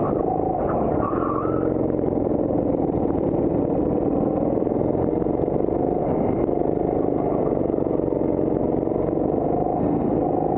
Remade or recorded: recorded